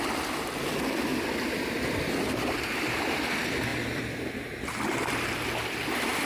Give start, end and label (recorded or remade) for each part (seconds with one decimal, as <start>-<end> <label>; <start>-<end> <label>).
0.0-6.3 recorded